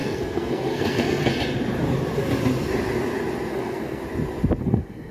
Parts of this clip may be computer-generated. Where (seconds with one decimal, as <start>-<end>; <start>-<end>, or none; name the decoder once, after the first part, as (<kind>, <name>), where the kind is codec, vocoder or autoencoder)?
0.0-1.3 (codec, SNAC); 3.5-4.0; 4.6-5.1